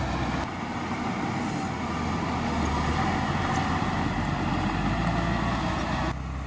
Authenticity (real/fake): real